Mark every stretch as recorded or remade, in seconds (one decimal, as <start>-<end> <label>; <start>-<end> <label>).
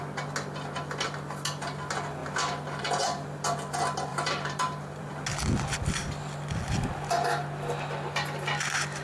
0.0-4.1 recorded; 4.1-5.1 remade; 5.1-9.0 recorded